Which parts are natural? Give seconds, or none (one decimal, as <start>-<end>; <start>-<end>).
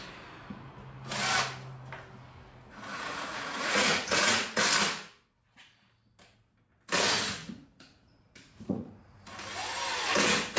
0.0-2.9; 4.6-7.4; 9.2-10.6